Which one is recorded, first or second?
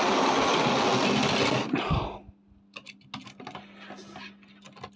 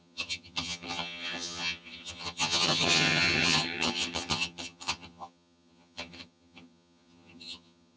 first